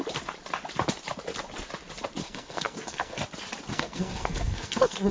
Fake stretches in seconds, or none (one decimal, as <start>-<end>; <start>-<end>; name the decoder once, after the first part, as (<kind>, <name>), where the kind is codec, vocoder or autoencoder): 2.2-3.2 (codec, SNAC); 3.7-5.1